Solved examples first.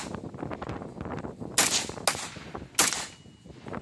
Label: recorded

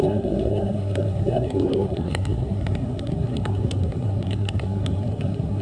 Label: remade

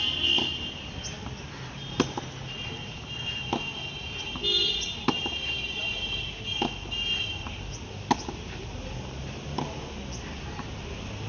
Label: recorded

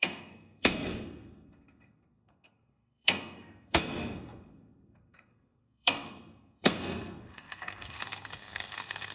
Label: remade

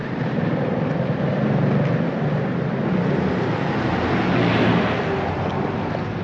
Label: recorded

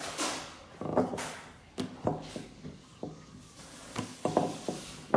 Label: remade